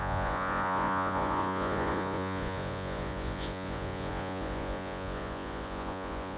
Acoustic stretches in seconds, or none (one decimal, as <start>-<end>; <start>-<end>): none